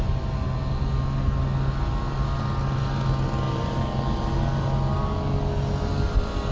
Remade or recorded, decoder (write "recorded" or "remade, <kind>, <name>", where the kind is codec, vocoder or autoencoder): recorded